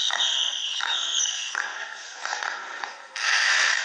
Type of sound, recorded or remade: remade